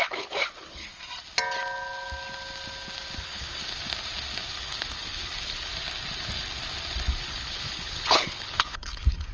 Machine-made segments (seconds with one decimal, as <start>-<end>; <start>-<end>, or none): 0.0-0.9; 3.2-3.6; 4.5-5.7; 7.1-9.3